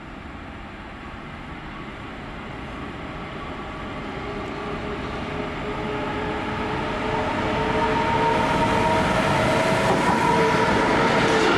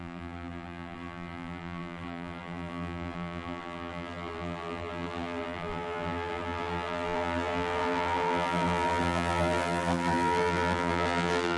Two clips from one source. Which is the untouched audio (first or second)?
first